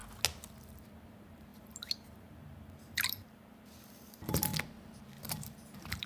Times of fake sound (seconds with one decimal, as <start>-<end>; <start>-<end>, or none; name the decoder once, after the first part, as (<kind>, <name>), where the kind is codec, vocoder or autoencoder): 0.8-4.5 (vocoder, BigVGAN v2); 5.2-6.1